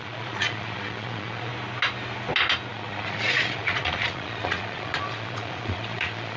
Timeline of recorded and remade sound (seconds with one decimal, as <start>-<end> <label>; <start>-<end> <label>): 0.0-1.5 remade; 1.5-2.7 recorded; 2.7-6.4 remade